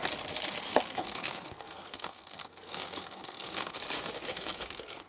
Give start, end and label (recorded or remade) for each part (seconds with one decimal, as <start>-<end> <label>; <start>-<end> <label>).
0.0-0.7 recorded; 0.7-3.8 remade; 3.8-4.3 recorded; 4.3-5.1 remade